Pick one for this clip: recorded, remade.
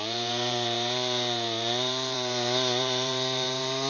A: remade